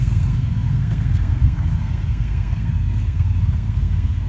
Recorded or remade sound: remade